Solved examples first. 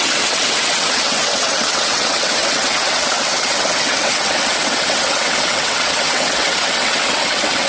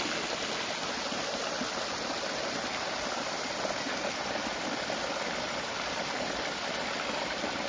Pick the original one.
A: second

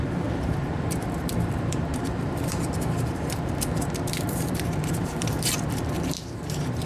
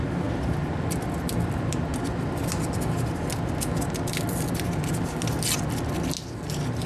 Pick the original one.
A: second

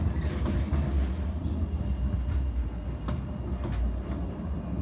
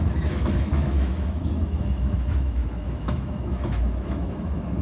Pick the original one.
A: first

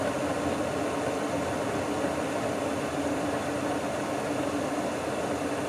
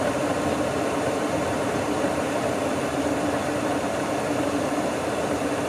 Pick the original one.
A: first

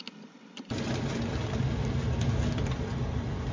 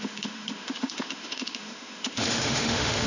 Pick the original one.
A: first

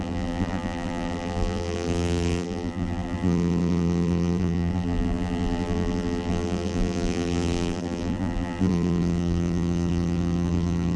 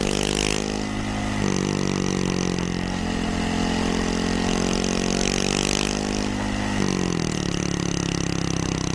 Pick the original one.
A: second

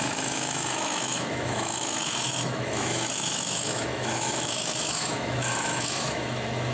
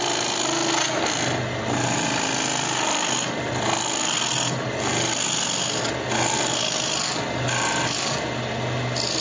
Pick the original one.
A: second